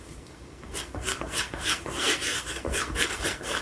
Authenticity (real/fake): fake